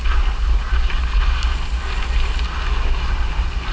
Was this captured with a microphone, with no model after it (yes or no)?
yes